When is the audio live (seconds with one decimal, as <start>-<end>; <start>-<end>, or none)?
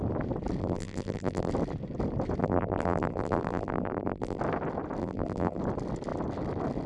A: 0.0-0.6; 1.5-2.4; 4.4-5.0; 5.6-6.9